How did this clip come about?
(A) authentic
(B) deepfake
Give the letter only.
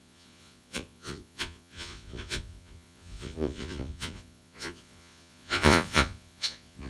B